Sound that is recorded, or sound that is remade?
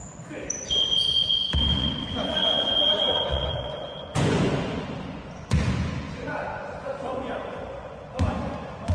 remade